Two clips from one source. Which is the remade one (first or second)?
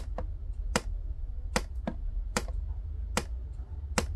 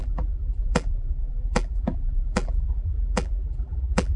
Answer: second